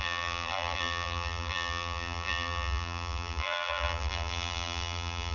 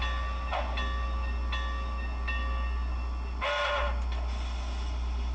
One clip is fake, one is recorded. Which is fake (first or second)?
first